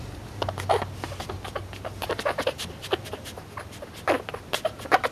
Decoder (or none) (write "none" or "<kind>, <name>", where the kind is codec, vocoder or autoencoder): none